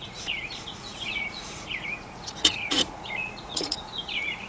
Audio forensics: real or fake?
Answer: fake